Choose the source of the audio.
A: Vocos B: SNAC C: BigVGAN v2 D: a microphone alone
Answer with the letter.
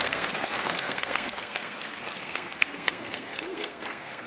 B